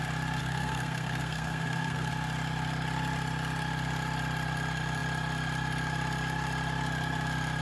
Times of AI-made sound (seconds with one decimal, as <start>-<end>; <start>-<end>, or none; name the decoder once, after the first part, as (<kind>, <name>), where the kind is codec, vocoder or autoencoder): 0.4-2.1 (codec, SNAC)